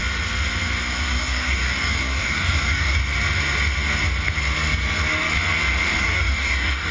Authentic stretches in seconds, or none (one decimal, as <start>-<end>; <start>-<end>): 0.0-1.1; 3.0-6.0